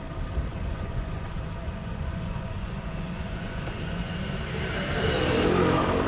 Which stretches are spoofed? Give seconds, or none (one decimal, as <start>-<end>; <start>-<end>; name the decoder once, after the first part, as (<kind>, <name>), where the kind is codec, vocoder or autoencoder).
0.5-4.2 (vocoder, Vocos)